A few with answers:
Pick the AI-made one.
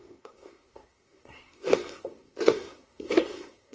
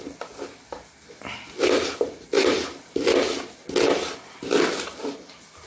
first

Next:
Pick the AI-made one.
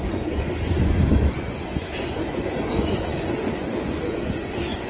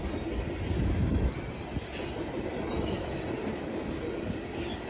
first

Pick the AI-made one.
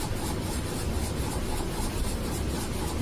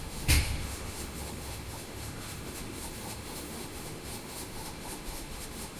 second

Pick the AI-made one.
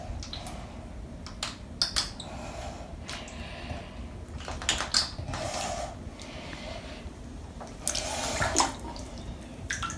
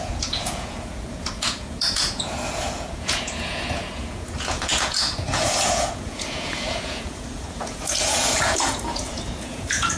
second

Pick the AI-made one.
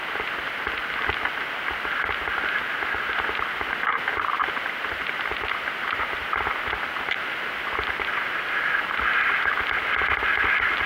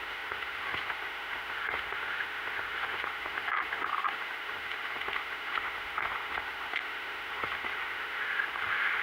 second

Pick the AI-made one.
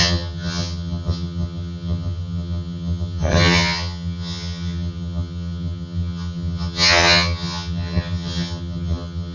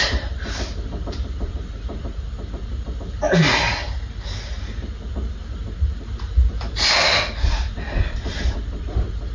first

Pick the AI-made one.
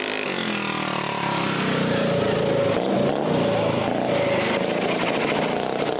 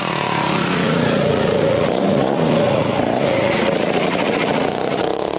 second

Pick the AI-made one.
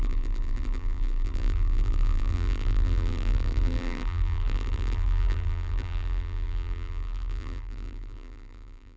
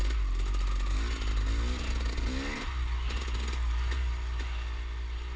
first